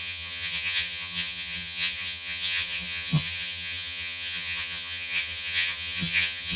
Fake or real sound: fake